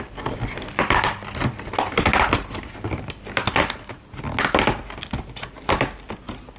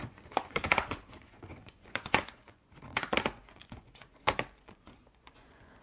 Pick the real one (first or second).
first